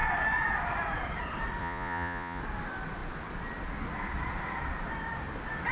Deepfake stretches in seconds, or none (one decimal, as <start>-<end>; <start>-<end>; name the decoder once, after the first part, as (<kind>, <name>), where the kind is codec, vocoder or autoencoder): 1.6-2.4 (vocoder, Vocos)